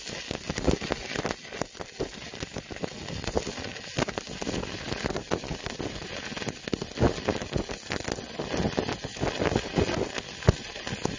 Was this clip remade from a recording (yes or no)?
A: no